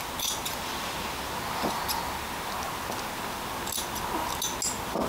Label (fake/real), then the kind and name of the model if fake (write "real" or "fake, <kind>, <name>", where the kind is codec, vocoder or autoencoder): real